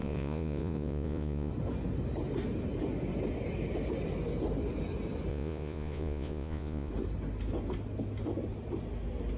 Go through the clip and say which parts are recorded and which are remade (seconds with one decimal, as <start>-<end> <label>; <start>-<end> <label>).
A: 0.0-1.5 remade; 1.5-5.3 recorded; 5.3-6.9 remade; 6.9-9.4 recorded